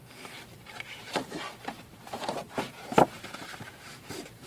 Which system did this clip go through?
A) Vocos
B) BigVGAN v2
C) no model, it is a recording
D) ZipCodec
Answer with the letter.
B